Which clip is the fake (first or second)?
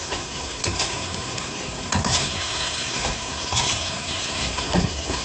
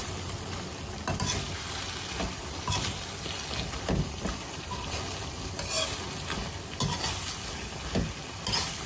first